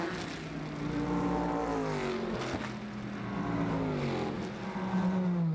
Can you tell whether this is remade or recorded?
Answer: recorded